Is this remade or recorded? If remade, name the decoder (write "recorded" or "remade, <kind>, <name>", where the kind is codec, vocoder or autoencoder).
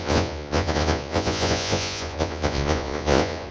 remade, vocoder, Vocos